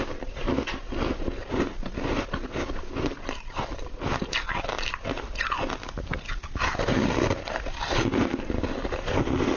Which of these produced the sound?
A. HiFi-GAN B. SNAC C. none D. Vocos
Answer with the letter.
C